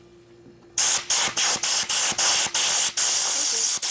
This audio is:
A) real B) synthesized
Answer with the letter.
A